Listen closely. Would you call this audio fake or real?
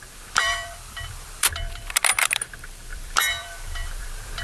fake